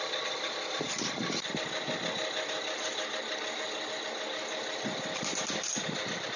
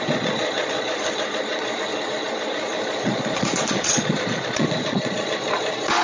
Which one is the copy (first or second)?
second